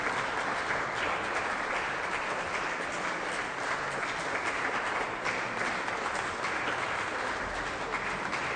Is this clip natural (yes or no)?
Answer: yes